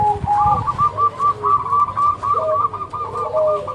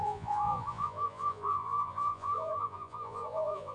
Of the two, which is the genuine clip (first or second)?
first